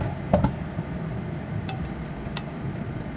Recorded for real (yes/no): yes